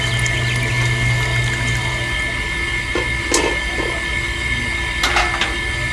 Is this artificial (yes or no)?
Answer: no